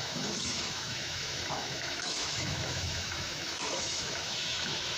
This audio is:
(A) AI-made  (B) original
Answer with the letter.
A